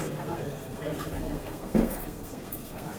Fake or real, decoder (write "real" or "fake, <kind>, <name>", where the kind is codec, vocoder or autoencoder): fake, codec, SNAC